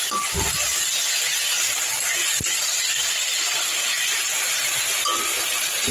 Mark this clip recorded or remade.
recorded